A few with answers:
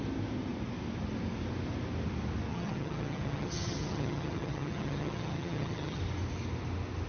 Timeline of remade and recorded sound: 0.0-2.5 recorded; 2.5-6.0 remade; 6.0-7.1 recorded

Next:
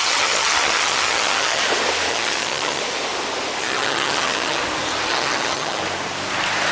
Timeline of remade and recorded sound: 0.0-1.6 remade; 1.6-2.1 recorded; 2.1-2.8 remade; 2.8-3.6 recorded; 3.6-4.6 remade; 4.6-5.1 recorded; 5.1-5.8 remade; 5.8-6.7 recorded

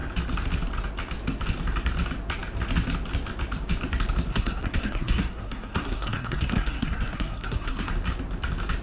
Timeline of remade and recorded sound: 0.0-4.3 recorded; 4.3-7.9 remade; 7.9-8.8 recorded

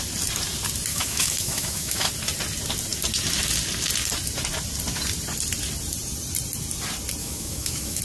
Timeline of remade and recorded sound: 0.0-0.9 recorded; 0.9-2.1 remade; 2.1-7.2 recorded; 7.2-8.0 remade